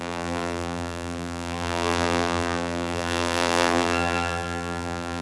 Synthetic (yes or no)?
yes